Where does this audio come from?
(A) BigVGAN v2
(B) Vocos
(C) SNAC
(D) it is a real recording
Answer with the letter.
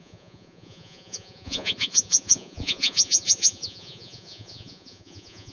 B